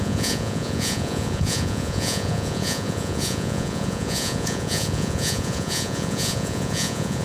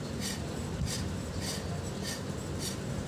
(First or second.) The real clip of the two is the second